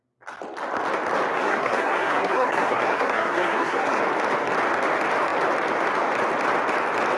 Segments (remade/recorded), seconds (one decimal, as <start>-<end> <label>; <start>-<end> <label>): 0.0-1.3 recorded; 1.3-4.0 remade; 4.0-7.2 recorded